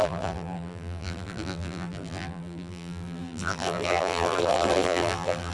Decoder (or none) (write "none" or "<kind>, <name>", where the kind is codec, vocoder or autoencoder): vocoder, BigVGAN v2